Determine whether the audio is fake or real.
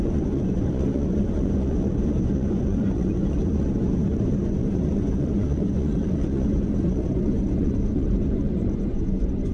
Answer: fake